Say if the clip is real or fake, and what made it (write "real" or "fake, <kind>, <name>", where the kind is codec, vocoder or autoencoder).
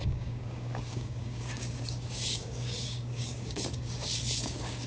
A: fake, codec, DAC